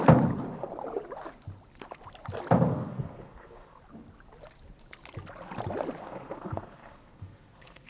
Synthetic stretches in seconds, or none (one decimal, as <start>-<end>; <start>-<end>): 2.7-3.8; 6.0-7.9